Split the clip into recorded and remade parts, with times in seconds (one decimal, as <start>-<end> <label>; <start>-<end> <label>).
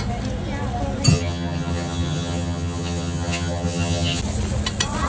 0.0-1.1 recorded; 1.1-4.2 remade; 4.2-5.1 recorded